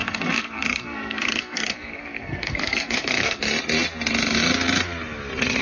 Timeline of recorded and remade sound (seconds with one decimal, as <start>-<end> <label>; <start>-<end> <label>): 0.0-3.4 remade; 3.4-5.6 recorded

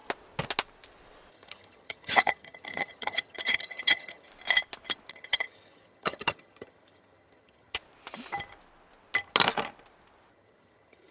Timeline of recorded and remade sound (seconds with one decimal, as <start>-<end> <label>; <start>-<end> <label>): 0.0-1.3 recorded; 1.3-4.3 remade; 4.3-5.1 recorded; 5.1-7.8 remade; 7.8-10.3 recorded; 10.3-11.1 remade

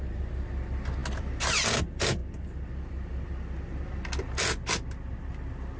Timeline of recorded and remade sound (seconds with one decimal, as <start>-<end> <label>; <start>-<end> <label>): 0.0-5.8 recorded

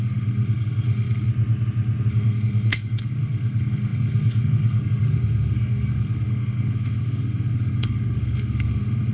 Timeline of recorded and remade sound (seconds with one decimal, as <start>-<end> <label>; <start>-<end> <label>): 0.0-1.3 remade; 1.3-2.1 recorded; 2.1-9.1 remade

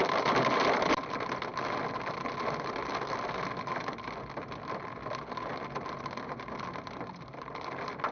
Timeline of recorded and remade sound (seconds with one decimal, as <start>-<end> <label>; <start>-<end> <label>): 0.0-8.1 recorded

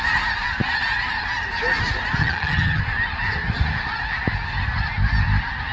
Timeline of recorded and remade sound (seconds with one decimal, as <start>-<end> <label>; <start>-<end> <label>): 0.0-2.2 recorded; 2.2-2.8 remade; 2.8-5.7 recorded

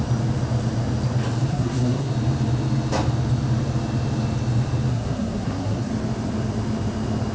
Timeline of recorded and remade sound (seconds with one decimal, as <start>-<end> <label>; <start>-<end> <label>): 0.0-1.5 recorded; 1.5-2.1 remade; 2.1-4.9 recorded; 4.9-5.9 remade; 5.9-7.3 recorded

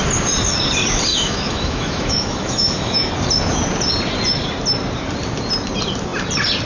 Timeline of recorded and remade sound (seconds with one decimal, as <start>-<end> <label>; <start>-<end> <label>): 0.0-1.1 recorded; 1.1-3.1 remade; 3.1-6.7 recorded